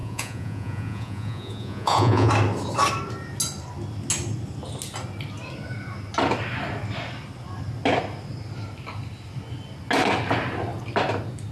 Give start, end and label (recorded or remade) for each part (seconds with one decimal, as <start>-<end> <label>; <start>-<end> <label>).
0.0-2.3 remade; 2.3-11.5 recorded